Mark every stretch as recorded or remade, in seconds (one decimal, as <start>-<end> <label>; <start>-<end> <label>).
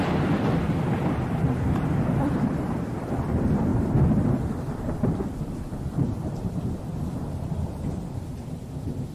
0.0-9.1 remade